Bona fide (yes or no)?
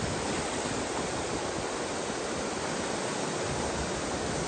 yes